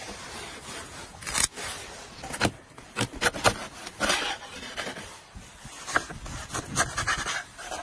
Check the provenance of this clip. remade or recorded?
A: recorded